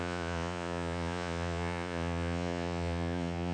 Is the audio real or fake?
fake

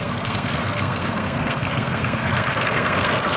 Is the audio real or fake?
fake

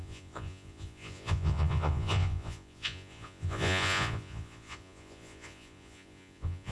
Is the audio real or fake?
fake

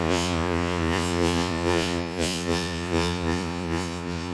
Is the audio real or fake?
fake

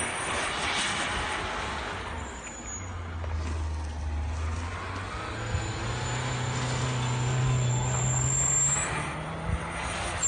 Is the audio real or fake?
real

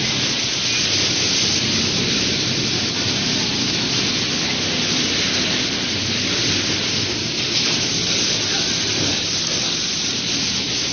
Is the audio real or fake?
real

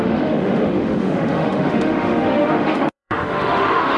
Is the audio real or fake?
fake